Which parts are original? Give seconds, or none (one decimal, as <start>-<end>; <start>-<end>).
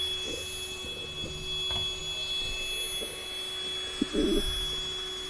0.0-5.3